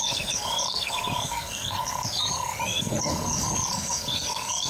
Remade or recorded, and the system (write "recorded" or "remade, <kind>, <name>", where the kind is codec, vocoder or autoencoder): remade, codec, SNAC